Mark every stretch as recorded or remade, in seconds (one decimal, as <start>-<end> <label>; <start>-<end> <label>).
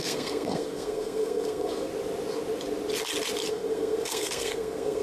0.0-1.9 remade; 1.9-3.5 recorded; 3.5-5.0 remade